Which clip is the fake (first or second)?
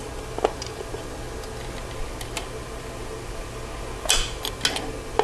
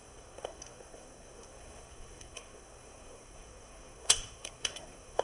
second